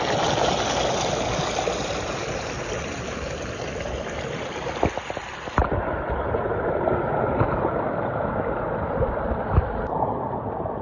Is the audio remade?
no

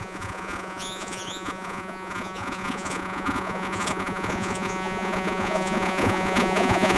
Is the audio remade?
yes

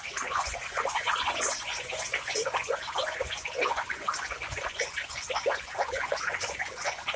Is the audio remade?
yes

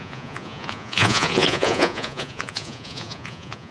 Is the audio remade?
yes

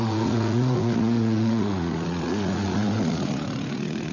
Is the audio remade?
yes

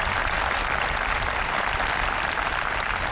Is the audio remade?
no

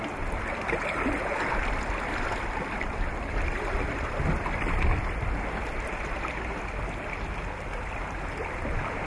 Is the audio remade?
no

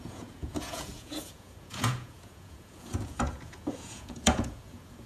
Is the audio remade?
yes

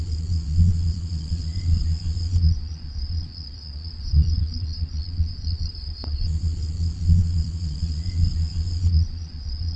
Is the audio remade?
yes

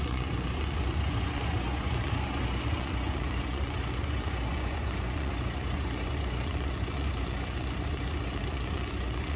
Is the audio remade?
yes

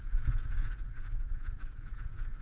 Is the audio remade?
yes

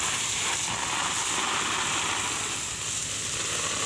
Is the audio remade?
no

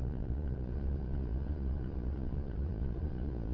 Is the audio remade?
yes